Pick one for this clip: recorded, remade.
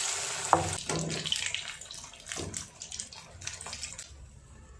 recorded